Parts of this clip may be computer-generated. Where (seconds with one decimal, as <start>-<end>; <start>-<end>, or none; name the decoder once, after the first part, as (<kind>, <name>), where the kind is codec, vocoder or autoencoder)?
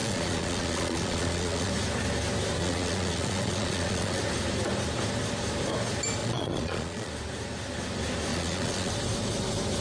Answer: 0.0-1.7 (vocoder, Vocos); 2.6-4.2; 6.2-7.1; 8.3-8.9